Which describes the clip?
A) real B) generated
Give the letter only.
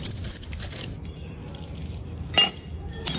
A